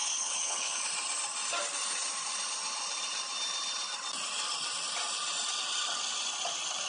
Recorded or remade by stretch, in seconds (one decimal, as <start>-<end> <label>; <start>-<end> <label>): 0.0-0.8 remade; 0.8-6.9 recorded